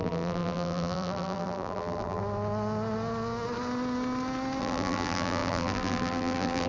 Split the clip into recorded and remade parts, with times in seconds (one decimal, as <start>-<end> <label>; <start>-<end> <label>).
0.0-2.2 remade; 2.2-4.6 recorded; 4.6-6.7 remade